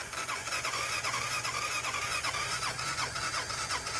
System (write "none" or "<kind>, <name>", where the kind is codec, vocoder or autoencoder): vocoder, Vocos